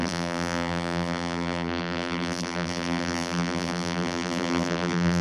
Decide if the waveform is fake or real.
fake